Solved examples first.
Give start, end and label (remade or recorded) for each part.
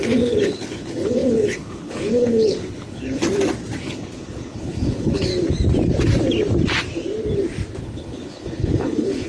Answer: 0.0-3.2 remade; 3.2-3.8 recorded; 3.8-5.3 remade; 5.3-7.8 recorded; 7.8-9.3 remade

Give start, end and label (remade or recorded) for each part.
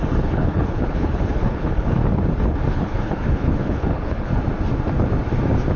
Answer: 0.0-2.0 remade; 2.0-2.7 recorded; 2.7-4.3 remade; 4.3-5.8 recorded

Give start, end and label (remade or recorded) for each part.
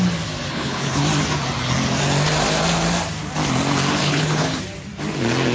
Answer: 0.0-0.5 recorded; 0.5-1.0 remade; 1.0-4.0 recorded; 4.0-4.6 remade; 4.6-5.5 recorded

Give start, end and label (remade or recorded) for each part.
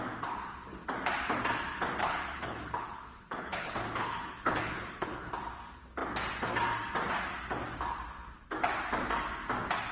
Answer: 0.0-2.0 recorded; 2.0-5.3 remade; 5.3-9.9 recorded